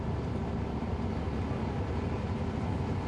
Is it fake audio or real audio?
real